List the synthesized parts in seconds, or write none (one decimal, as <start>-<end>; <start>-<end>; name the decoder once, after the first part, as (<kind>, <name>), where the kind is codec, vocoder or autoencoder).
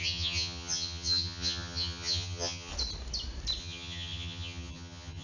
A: 0.0-2.7 (vocoder, HiFi-GAN); 3.6-5.2